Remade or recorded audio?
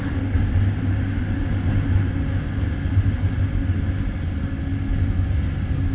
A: recorded